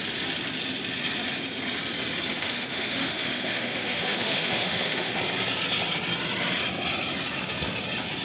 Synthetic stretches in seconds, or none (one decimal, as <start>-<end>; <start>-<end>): 2.3-5.2